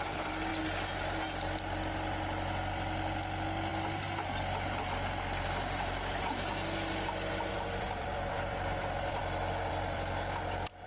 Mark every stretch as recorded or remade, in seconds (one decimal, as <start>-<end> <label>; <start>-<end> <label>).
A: 0.0-0.5 remade; 0.5-2.7 recorded; 2.7-3.7 remade; 3.7-7.5 recorded; 7.5-9.2 remade; 9.2-9.7 recorded; 9.7-10.9 remade